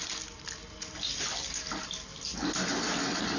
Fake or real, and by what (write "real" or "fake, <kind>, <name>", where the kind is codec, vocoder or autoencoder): real